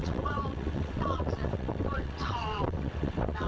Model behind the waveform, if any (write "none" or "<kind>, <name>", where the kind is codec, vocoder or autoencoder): vocoder, WaveNeXt